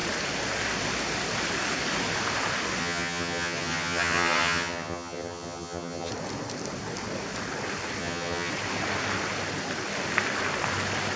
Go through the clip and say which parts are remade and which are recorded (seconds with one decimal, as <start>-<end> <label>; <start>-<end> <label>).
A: 0.0-2.8 recorded; 2.8-6.1 remade; 6.1-8.0 recorded; 8.0-8.5 remade; 8.5-11.2 recorded